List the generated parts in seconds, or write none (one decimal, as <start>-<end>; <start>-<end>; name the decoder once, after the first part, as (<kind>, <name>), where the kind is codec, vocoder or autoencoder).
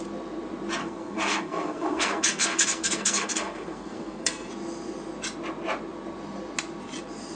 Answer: 0.8-4.5 (codec, SNAC)